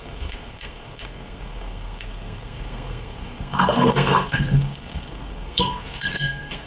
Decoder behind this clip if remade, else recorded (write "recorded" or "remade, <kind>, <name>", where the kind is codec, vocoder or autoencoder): remade, codec, SNAC